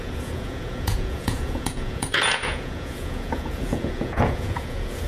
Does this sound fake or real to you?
fake